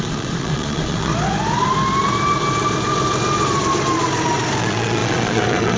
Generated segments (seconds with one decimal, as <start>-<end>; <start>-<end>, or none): 0.0-1.1; 4.6-5.8